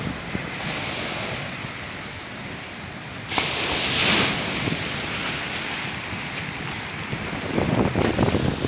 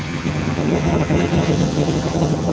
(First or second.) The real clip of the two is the first